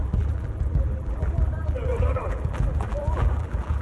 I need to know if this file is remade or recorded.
remade